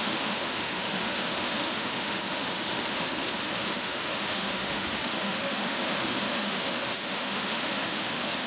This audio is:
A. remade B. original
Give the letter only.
A